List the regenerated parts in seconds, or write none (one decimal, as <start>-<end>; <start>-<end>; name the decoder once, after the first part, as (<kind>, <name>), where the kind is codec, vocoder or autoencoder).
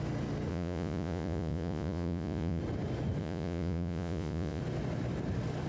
0.5-2.6 (vocoder, Vocos); 3.2-4.6